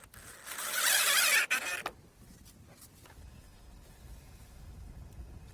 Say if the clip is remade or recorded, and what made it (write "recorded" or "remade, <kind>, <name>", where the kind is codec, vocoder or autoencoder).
recorded